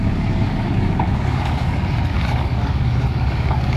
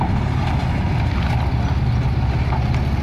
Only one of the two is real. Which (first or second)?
second